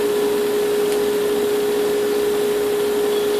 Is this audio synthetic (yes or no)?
no